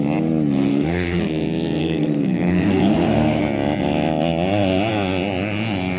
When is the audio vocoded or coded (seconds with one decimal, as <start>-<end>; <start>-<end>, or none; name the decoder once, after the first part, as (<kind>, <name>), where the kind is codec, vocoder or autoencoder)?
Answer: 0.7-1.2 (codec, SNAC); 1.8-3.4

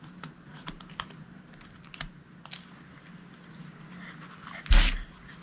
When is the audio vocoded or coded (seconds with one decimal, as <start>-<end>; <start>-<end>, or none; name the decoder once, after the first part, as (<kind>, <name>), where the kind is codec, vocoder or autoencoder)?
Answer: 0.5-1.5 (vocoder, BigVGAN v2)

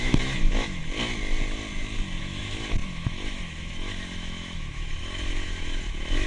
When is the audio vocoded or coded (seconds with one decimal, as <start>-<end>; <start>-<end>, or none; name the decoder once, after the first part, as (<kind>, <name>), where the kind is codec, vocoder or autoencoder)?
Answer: 0.0-0.8 (autoencoder, DAC-VAE); 2.2-6.3

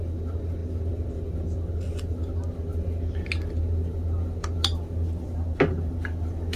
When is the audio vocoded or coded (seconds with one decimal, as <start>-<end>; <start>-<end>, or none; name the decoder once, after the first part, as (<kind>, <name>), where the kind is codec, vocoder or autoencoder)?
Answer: none